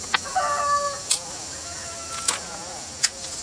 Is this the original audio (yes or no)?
yes